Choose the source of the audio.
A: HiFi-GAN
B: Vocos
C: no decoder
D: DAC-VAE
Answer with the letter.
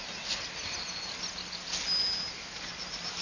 C